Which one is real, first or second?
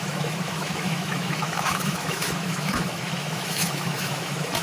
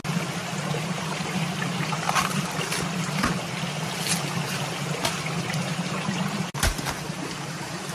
second